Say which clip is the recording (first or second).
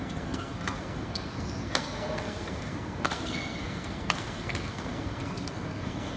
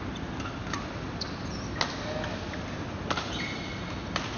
second